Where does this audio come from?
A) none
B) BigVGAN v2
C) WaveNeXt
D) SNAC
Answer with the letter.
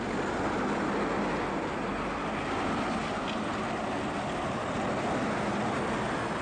A